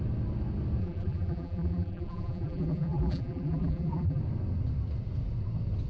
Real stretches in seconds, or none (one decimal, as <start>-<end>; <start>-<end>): 0.0-0.8; 4.2-5.9